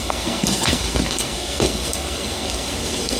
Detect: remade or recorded remade